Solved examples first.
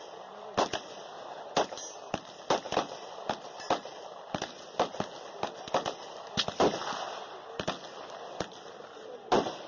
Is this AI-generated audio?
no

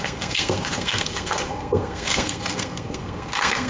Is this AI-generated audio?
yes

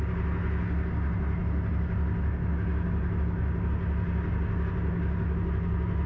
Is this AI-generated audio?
no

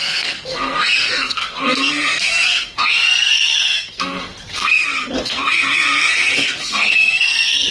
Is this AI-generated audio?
yes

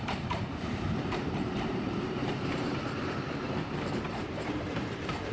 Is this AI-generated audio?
yes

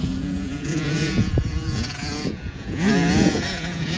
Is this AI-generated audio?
yes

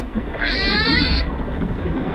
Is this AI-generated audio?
yes